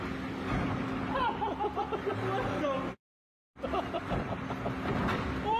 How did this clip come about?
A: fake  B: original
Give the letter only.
B